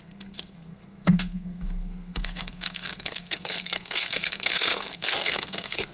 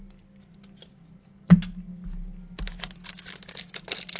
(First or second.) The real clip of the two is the second